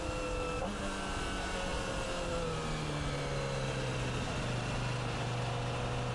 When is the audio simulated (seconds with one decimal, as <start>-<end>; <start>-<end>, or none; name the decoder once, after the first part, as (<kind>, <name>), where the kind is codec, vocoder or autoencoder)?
none